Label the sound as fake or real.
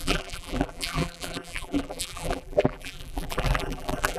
fake